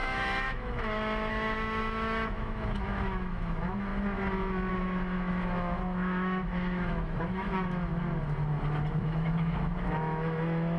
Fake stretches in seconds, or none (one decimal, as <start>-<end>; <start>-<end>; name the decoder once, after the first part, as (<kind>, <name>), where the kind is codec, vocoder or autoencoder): 0.0-3.9 (autoencoder, DAC-VAE); 4.7-7.9; 9.0-10.8